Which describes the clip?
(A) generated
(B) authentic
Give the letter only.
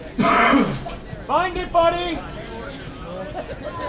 B